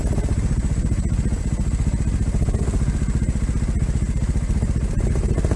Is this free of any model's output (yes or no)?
yes